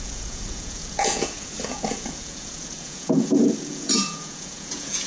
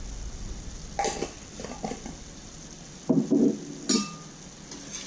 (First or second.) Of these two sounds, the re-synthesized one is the first